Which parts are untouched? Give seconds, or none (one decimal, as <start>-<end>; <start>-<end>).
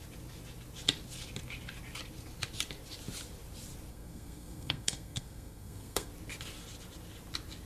0.0-3.9; 6.1-7.7